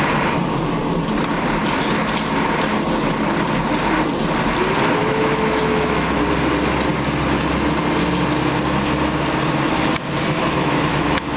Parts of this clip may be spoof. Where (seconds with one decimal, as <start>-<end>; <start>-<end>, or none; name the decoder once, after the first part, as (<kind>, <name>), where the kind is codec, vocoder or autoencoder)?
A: 5.0-6.2 (autoencoder, DAC-VAE); 10.6-11.4